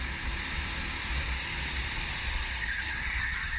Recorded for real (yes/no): yes